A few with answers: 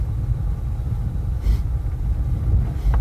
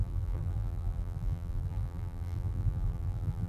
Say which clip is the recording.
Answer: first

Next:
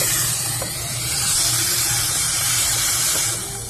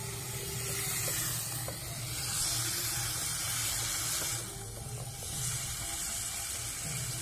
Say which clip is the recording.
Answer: second